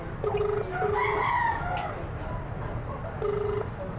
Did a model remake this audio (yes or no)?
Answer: no